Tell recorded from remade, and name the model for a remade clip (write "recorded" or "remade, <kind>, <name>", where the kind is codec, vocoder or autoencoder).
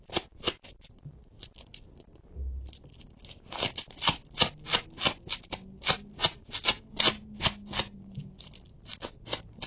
recorded